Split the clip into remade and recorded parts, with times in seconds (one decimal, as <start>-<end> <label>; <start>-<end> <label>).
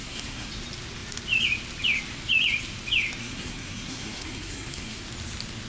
0.0-0.5 remade; 0.5-3.2 recorded; 3.2-5.0 remade; 5.0-5.7 recorded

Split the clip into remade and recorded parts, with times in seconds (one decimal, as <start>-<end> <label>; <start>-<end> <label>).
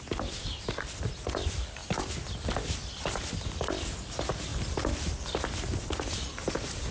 0.0-1.8 remade; 1.8-2.9 recorded; 2.9-4.5 remade; 4.5-6.5 recorded; 6.5-6.9 remade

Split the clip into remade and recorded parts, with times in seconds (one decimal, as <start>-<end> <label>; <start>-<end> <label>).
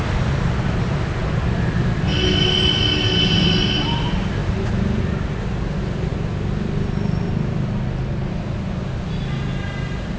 0.0-10.2 recorded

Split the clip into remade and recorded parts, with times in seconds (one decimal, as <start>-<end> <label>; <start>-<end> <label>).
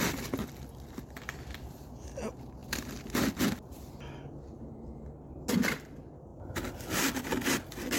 0.0-8.0 recorded